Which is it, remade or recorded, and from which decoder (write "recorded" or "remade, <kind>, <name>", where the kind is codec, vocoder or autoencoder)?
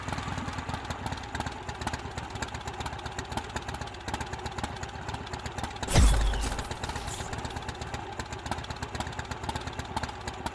recorded